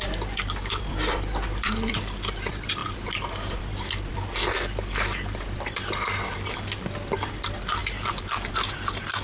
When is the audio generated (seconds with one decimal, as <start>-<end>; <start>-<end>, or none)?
0.0-9.2